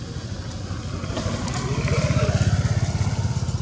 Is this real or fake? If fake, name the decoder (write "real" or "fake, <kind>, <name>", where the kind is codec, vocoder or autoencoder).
real